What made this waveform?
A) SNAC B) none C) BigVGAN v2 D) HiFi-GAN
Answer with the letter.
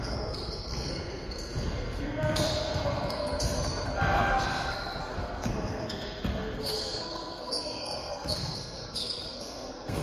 A